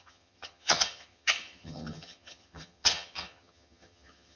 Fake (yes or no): yes